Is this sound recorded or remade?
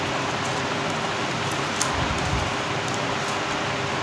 recorded